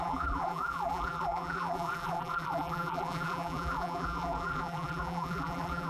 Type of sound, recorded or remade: remade